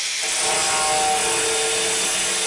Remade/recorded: recorded